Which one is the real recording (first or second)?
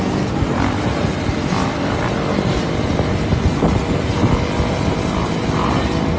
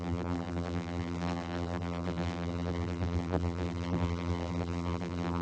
first